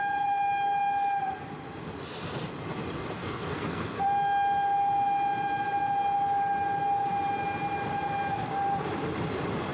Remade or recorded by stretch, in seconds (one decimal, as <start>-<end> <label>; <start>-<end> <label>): 0.0-3.2 recorded; 3.2-4.0 remade; 4.0-9.7 recorded